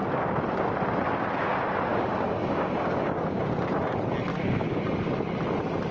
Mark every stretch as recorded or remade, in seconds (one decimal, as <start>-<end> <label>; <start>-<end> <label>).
0.0-1.9 recorded; 1.9-3.5 remade; 3.5-4.3 recorded; 4.3-4.8 remade; 4.8-5.9 recorded